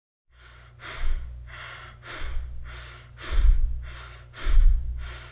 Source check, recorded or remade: recorded